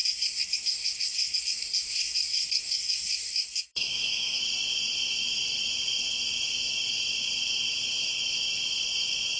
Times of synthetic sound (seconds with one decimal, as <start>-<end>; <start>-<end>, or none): 0.0-4.4